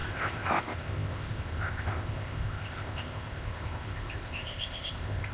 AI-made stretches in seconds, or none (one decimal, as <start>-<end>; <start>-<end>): 0.0-5.3